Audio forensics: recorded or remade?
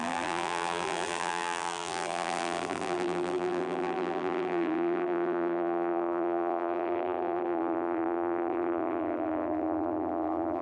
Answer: remade